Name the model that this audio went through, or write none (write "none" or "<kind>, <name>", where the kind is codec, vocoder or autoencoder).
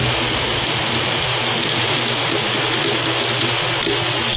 none